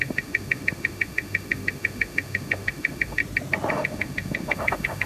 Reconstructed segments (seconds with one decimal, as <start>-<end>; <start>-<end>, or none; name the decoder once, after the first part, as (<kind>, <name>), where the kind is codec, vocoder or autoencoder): 0.0-3.2 (autoencoder, DAC-VAE); 3.7-5.1

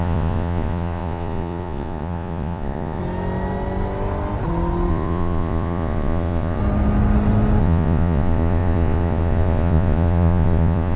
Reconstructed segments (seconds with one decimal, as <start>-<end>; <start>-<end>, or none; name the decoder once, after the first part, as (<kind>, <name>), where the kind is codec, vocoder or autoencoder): 0.0-3.0 (vocoder, Vocos); 4.9-6.6; 7.6-11.0

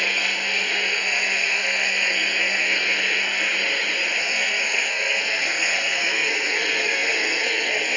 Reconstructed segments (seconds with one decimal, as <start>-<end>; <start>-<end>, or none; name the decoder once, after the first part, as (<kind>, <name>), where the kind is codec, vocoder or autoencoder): 0.0-3.5 (codec, SNAC); 4.2-8.0

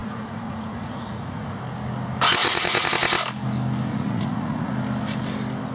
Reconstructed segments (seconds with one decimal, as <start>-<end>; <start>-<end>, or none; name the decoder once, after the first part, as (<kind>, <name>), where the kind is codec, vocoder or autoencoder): 0.0-1.6 (vocoder, Vocos); 2.4-2.9; 3.9-4.7

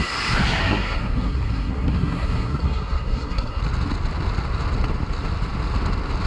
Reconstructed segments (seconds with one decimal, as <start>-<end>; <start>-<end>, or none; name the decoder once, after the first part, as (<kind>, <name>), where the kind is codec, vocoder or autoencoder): 0.6-3.6 (codec, SNAC)

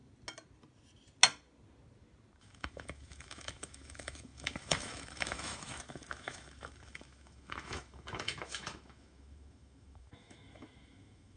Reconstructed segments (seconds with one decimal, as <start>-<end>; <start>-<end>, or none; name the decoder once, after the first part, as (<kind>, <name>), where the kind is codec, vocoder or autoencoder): 2.4-11.4 (autoencoder, DAC-VAE)

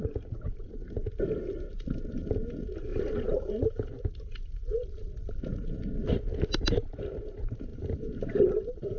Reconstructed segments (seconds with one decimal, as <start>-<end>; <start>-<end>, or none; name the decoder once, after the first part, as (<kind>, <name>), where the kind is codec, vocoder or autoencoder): 2.9-5.4 (vocoder, BigVGAN v2); 7.7-9.0